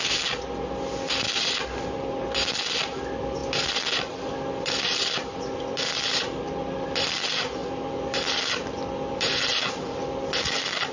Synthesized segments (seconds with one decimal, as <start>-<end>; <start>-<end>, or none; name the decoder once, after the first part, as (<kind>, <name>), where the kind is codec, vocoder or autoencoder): 0.0-10.9 (vocoder, BigVGAN v2)

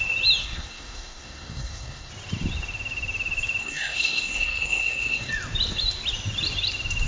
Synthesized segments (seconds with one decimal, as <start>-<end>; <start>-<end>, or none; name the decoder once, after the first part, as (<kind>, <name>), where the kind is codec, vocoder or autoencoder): 0.4-2.1 (codec, SNAC); 3.6-5.3

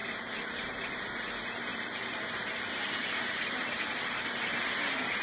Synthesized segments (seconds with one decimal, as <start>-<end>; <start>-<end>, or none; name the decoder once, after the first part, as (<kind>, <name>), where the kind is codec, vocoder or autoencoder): 0.0-1.0 (vocoder, BigVGAN v2); 1.7-4.3

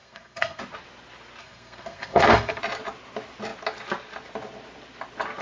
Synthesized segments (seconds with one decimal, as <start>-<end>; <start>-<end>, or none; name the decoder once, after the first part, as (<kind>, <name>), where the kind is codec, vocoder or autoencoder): 0.0-0.6 (codec, SNAC); 1.4-2.6

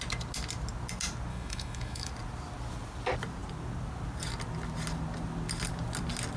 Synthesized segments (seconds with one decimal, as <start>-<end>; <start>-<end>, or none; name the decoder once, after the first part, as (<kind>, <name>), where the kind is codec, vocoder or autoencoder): 1.3-2.1 (autoencoder, DAC-VAE)

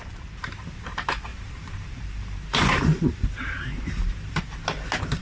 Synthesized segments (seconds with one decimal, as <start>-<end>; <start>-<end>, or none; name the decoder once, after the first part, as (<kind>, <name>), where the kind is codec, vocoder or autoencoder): 1.3-4.4 (vocoder, BigVGAN v2)